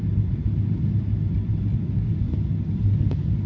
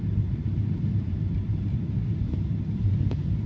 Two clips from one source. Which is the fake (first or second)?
second